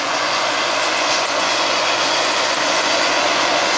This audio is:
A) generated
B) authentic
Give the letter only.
A